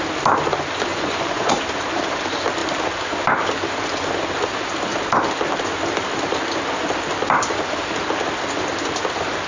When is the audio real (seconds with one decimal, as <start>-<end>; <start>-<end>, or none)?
0.0-0.9; 1.5-9.5